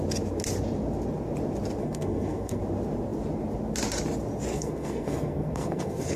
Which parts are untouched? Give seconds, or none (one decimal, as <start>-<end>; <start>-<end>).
0.0-1.8; 2.6-4.5